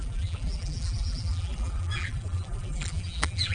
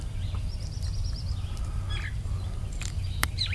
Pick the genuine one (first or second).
second